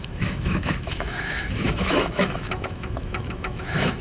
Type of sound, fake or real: fake